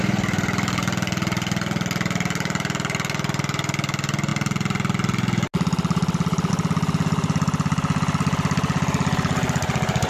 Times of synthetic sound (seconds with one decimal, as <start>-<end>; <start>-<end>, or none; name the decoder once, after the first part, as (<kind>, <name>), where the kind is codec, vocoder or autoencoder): none

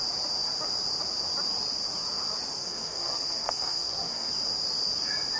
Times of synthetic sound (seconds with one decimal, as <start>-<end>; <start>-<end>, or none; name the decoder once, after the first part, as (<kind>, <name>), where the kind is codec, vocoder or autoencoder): 2.6-4.3 (codec, SNAC)

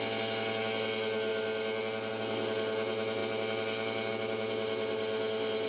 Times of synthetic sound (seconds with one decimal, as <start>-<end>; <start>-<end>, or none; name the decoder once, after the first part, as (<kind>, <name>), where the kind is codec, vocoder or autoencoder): none

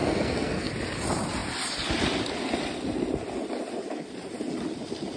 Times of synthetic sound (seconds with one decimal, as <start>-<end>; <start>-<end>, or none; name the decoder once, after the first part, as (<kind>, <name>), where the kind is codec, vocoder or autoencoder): 0.0-0.7 (codec, SNAC)

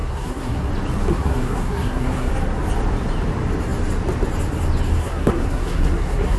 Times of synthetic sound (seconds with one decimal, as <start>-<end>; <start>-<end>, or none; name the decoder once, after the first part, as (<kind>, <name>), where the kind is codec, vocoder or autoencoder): 0.0-0.7 (codec, SNAC); 1.1-2.3; 5.0-6.4